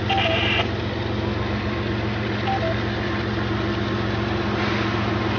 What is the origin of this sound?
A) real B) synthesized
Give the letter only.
A